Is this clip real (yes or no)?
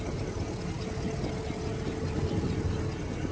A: yes